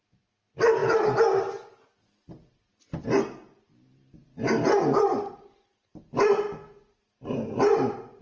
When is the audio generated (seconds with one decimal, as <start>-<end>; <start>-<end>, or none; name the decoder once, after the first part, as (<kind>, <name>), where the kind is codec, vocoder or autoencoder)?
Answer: none